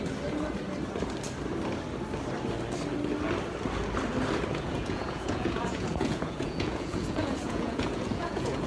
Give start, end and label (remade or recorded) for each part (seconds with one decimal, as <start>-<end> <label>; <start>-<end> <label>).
0.0-4.5 recorded; 4.5-8.7 remade